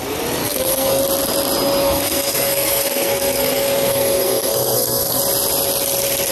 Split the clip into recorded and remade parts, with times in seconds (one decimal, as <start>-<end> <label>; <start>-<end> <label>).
0.0-0.4 recorded; 0.4-1.0 remade; 1.0-1.8 recorded; 1.8-5.2 remade; 5.2-6.3 recorded